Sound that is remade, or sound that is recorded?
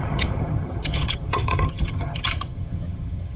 remade